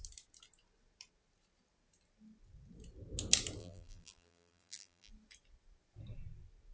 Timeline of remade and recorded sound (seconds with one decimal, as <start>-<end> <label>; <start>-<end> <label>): 0.0-3.6 recorded; 3.6-5.1 remade; 5.1-6.7 recorded

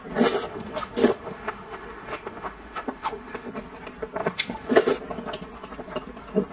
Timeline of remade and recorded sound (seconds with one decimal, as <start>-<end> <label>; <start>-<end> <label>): 0.0-0.5 recorded; 0.5-3.5 remade; 3.5-4.2 recorded; 4.2-4.9 remade; 4.9-6.5 recorded

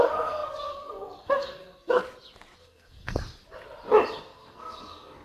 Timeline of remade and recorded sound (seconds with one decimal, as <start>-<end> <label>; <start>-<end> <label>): 0.0-2.0 remade; 2.0-2.6 recorded; 2.6-3.2 remade; 3.2-4.2 recorded; 4.2-5.2 remade

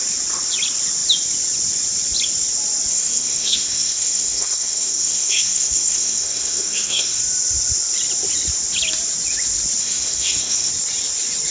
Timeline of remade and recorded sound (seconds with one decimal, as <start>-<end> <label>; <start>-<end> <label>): 0.0-2.9 recorded; 2.9-7.2 remade; 7.2-9.8 recorded; 9.8-10.7 remade; 10.7-11.5 recorded